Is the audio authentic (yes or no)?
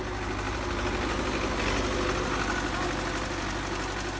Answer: yes